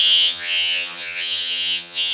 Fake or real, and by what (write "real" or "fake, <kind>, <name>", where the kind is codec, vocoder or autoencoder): fake, vocoder, HiFi-GAN